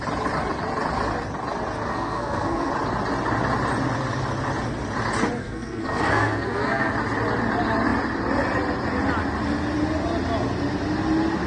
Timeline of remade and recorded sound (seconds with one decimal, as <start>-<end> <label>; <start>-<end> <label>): 0.0-1.9 recorded; 1.9-2.7 remade; 2.7-5.4 recorded; 5.4-6.9 remade; 6.9-11.5 recorded